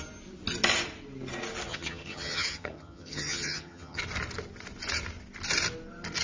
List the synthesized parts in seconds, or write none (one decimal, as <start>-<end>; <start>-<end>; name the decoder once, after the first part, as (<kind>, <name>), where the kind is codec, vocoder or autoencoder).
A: 1.7-4.0 (vocoder, HiFi-GAN)